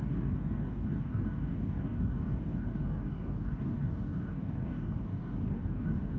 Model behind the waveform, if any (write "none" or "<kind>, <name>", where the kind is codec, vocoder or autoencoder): codec, DAC